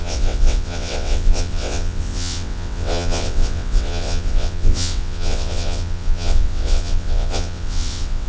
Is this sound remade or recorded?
remade